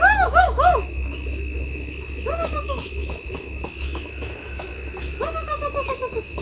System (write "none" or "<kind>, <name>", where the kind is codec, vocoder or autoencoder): autoencoder, DAC-VAE